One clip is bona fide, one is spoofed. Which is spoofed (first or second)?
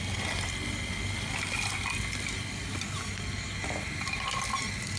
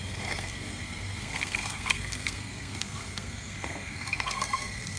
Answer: second